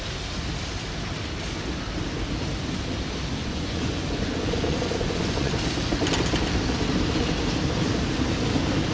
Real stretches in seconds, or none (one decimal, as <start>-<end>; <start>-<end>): 0.0-3.4; 5.5-8.9